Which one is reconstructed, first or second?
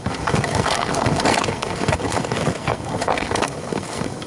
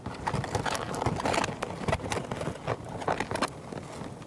first